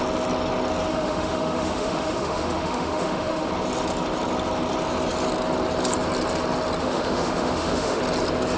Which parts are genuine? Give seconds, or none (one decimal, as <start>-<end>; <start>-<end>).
0.0-0.9; 3.5-6.8; 8.0-8.6